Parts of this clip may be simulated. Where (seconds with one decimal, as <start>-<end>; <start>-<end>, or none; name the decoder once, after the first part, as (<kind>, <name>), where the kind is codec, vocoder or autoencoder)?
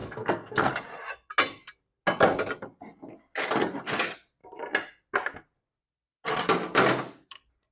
0.0-0.7 (codec, SNAC)